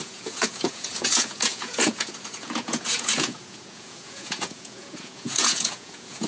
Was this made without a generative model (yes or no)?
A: no